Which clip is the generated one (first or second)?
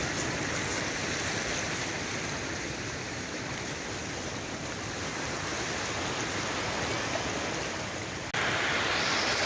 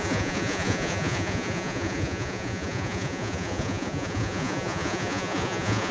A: second